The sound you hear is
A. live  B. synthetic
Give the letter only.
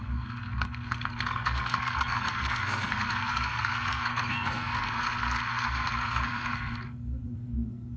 B